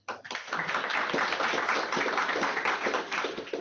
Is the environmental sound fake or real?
real